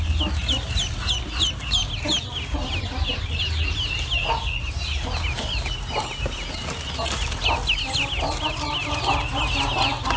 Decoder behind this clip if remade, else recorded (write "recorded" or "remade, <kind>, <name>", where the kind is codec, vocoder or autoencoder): recorded